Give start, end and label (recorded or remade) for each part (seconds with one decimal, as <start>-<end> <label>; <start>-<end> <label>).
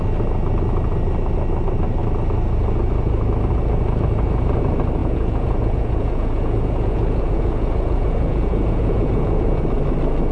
0.0-5.0 recorded; 5.0-9.6 remade; 9.6-10.3 recorded